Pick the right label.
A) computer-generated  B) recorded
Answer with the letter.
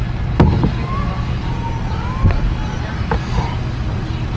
B